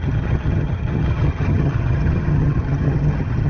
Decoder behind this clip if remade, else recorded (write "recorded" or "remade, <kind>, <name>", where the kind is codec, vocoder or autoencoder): remade, vocoder, HiFi-GAN